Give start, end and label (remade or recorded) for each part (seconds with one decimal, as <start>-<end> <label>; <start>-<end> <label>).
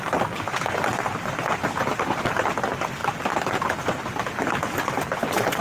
0.0-1.9 recorded; 1.9-2.5 remade; 2.5-5.6 recorded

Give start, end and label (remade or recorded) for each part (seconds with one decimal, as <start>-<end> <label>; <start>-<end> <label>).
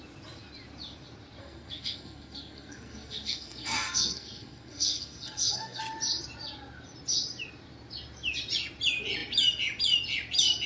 0.0-1.4 recorded; 1.4-5.8 remade; 5.8-10.7 recorded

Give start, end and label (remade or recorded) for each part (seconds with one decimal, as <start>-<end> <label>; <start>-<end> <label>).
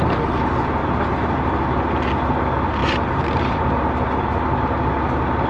0.0-0.8 recorded; 0.8-1.5 remade; 1.5-2.8 recorded; 2.8-3.6 remade; 3.6-5.5 recorded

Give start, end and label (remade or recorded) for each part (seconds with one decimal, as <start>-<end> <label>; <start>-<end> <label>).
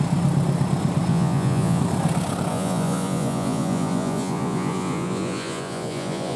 0.0-1.1 recorded; 1.1-1.8 remade; 1.8-2.5 recorded; 2.5-6.4 remade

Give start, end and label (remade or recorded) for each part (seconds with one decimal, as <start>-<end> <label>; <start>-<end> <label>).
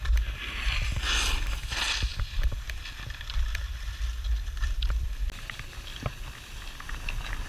0.0-7.5 recorded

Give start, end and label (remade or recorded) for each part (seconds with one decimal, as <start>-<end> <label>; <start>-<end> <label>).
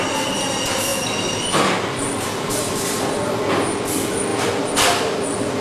0.0-0.9 recorded; 0.9-3.4 remade; 3.4-4.3 recorded; 4.3-5.6 remade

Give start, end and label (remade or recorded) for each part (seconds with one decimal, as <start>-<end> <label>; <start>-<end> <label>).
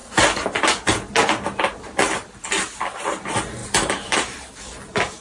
0.0-3.6 recorded; 3.6-4.6 remade; 4.6-5.2 recorded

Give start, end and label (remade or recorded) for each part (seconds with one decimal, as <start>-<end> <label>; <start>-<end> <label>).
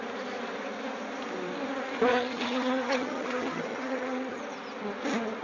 0.0-2.1 recorded; 2.1-4.4 remade; 4.4-5.4 recorded